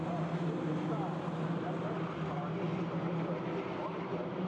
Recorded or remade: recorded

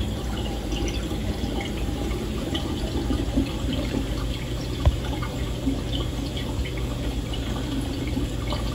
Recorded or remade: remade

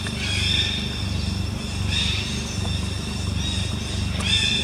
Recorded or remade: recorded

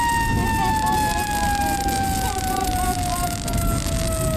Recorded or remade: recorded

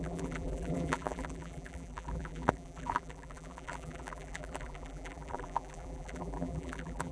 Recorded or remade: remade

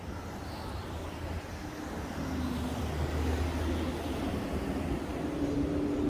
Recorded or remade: recorded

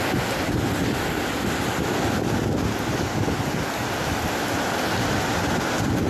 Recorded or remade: recorded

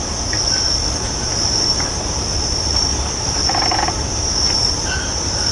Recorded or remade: remade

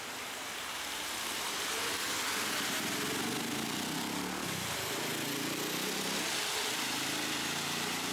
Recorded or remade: recorded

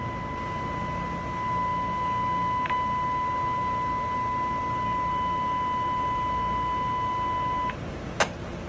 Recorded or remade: recorded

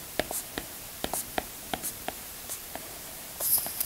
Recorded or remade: remade